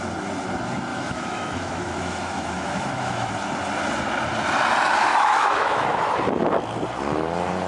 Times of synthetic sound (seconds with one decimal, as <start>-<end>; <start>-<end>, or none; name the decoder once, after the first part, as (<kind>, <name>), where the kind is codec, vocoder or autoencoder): 0.9-3.3 (autoencoder, DAC-VAE); 5.1-6.1